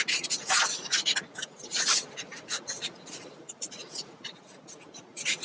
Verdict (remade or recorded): remade